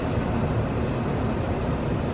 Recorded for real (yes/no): yes